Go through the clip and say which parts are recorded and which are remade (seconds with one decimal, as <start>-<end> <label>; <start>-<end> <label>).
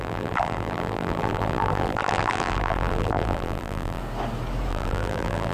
0.0-4.0 remade; 4.0-4.7 recorded; 4.7-5.5 remade